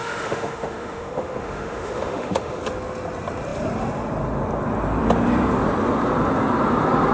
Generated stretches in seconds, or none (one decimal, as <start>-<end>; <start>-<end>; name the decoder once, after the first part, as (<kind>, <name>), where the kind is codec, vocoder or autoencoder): 0.0-2.6 (autoencoder, DAC-VAE)